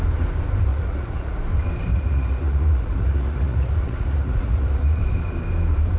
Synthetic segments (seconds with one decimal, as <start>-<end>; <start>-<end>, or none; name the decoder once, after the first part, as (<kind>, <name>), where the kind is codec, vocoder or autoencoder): 0.7-1.4 (vocoder, Vocos); 1.9-5.0